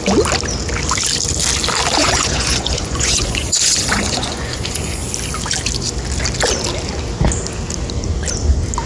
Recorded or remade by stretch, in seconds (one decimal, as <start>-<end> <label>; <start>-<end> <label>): 0.0-2.0 recorded; 2.0-5.1 remade; 5.1-8.9 recorded